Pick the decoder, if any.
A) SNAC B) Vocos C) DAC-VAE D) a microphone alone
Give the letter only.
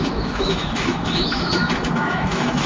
C